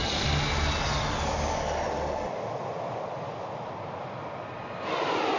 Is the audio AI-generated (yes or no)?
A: no